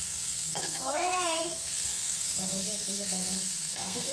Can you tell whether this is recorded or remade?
remade